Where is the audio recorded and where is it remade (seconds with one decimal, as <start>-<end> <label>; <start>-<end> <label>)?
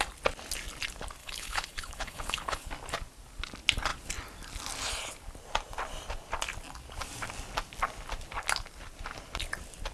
0.0-1.2 recorded; 1.2-2.7 remade; 2.7-9.9 recorded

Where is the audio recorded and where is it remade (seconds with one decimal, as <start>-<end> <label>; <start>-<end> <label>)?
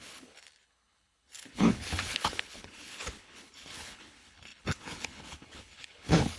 0.0-6.4 remade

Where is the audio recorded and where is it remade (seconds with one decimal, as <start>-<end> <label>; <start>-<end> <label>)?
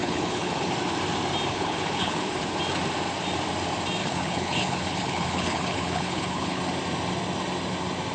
0.0-0.7 remade; 0.7-1.5 recorded; 1.5-2.4 remade; 2.4-4.0 recorded; 4.0-6.6 remade; 6.6-8.1 recorded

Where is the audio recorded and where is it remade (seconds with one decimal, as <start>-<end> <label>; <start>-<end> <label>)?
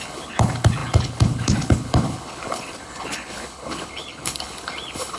0.0-5.2 remade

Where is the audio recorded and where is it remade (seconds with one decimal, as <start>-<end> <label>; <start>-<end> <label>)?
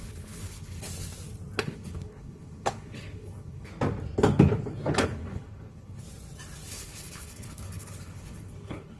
0.0-0.9 remade; 0.9-1.6 recorded; 1.6-3.7 remade; 3.7-4.9 recorded; 4.9-6.0 remade; 6.0-6.7 recorded; 6.7-9.0 remade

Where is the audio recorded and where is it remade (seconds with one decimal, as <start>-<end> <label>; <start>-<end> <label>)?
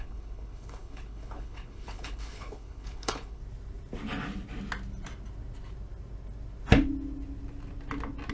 0.0-3.4 remade; 3.4-8.3 recorded